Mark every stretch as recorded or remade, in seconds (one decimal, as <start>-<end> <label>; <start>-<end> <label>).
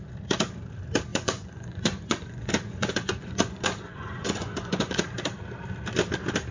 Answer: 0.0-1.1 recorded; 1.1-5.0 remade; 5.0-6.5 recorded